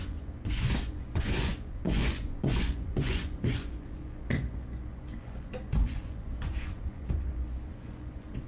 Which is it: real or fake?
fake